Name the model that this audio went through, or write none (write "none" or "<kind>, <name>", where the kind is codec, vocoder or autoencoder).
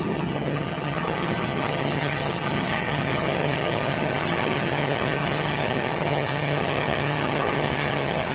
vocoder, HiFi-GAN